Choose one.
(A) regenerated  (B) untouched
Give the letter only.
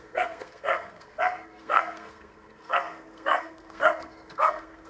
A